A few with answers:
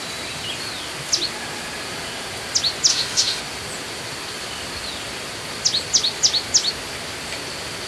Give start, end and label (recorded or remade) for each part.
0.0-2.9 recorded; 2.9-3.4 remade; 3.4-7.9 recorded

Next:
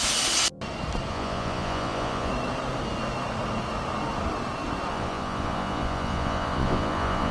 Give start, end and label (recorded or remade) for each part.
0.0-1.1 recorded; 1.1-2.3 remade; 2.3-4.9 recorded; 4.9-7.3 remade

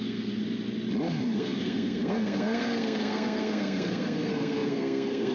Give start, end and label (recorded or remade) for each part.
0.0-0.4 remade; 0.4-1.2 recorded; 1.2-5.3 remade